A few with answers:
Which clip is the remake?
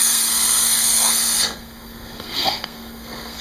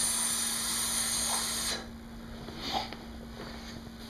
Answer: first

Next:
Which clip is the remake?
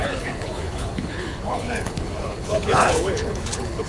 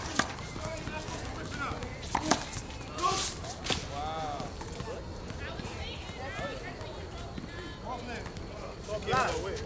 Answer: first